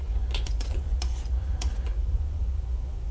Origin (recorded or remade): remade